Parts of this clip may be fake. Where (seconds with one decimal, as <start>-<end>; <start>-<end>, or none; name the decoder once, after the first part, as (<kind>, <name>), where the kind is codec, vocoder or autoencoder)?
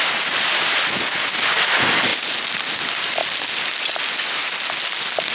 none